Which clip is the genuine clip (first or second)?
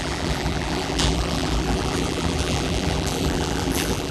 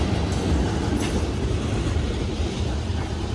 second